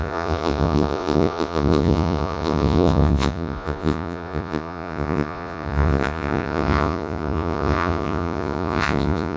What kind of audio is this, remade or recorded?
remade